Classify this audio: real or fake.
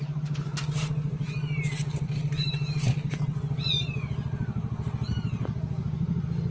real